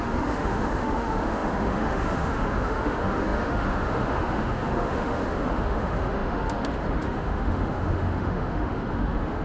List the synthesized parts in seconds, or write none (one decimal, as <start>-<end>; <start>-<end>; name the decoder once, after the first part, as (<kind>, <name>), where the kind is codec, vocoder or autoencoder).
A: 0.0-9.4 (autoencoder, DAC-VAE)